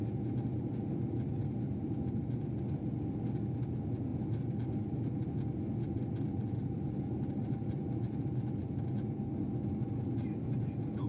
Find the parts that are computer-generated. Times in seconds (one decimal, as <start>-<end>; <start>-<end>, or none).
none